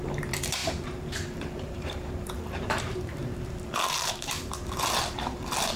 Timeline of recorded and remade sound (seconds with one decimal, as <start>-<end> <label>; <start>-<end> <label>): 0.0-5.8 remade